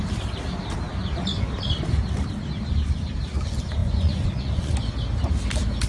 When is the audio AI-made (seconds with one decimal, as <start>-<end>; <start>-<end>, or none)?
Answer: 3.8-4.7